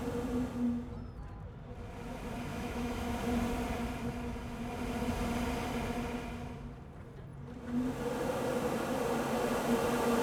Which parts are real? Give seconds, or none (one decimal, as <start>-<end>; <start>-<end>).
0.0-2.5; 3.2-10.2